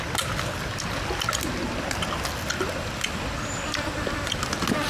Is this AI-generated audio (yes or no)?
no